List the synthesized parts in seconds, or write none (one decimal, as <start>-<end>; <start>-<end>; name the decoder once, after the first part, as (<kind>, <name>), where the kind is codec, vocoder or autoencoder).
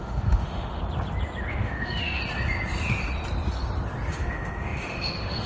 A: 0.0-0.8 (autoencoder, DAC-VAE); 1.5-2.2; 4.1-5.5